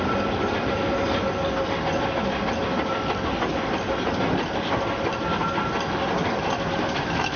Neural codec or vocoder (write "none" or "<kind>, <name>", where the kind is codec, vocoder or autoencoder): none